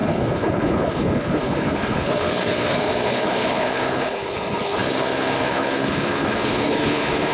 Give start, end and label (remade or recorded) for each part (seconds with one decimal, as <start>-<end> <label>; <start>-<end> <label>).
0.0-7.3 remade